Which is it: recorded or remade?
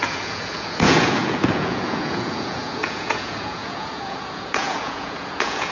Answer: remade